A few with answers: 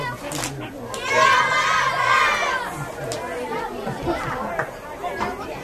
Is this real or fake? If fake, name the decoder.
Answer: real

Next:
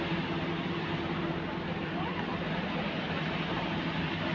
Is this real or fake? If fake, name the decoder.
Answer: fake, vocoder, BigVGAN v2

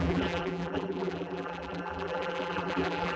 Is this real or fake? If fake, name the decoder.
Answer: fake, vocoder, BigVGAN v2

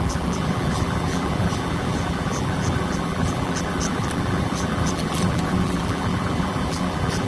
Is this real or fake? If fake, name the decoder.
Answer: fake, vocoder, BigVGAN v2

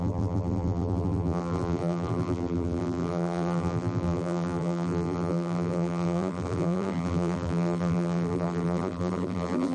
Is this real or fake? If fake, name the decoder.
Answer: fake, vocoder, BigVGAN v2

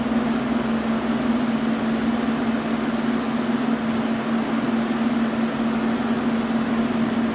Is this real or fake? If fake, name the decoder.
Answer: real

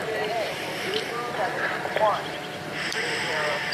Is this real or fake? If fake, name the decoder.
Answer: fake, vocoder, BigVGAN v2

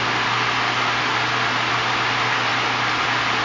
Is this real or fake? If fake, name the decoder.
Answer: fake, vocoder, BigVGAN v2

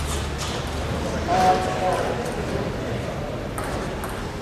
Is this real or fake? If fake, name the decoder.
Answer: real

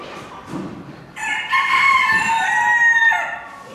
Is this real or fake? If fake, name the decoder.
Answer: fake, vocoder, BigVGAN v2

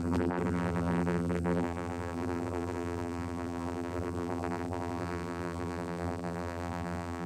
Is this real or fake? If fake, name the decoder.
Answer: fake, vocoder, BigVGAN v2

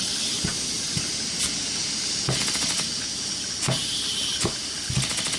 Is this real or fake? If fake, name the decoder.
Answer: real